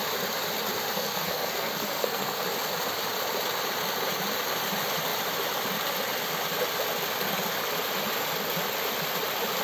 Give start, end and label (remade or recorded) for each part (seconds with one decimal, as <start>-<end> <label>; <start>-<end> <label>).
0.0-0.9 recorded; 0.9-2.4 remade; 2.4-9.6 recorded